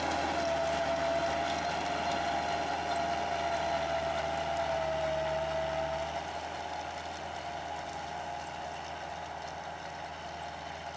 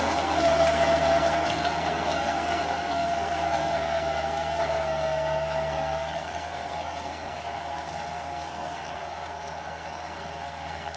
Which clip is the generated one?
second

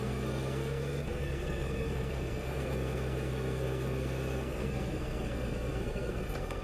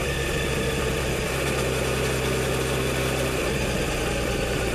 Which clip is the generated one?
first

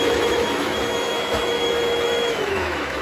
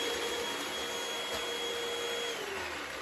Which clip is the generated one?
first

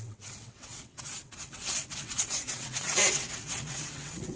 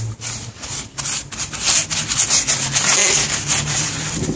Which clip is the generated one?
first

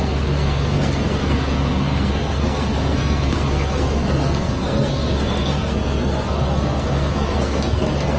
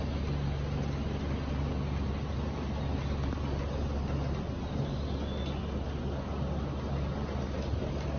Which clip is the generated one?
first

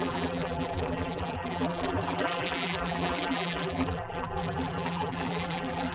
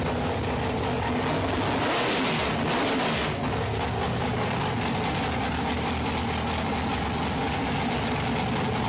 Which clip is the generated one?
first